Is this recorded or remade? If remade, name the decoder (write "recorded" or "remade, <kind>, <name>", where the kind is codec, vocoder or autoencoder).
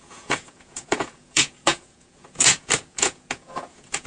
remade, vocoder, Vocos